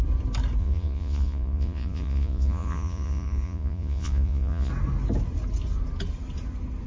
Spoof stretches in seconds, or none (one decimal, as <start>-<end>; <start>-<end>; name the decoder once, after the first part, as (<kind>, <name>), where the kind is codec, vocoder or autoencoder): 0.6-4.7 (vocoder, Vocos)